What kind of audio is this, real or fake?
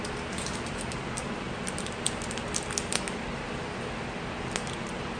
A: real